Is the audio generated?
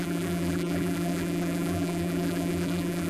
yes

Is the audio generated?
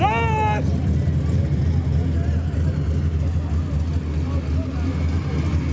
no